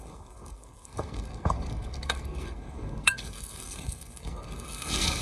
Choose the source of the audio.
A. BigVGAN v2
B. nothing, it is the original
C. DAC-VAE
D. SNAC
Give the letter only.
D